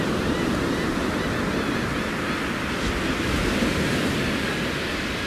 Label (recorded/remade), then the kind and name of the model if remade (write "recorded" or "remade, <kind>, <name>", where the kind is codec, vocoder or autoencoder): recorded